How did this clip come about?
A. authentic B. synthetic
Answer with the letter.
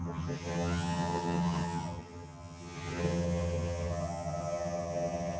B